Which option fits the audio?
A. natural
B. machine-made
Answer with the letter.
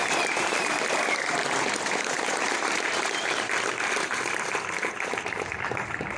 B